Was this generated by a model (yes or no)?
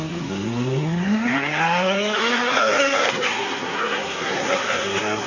yes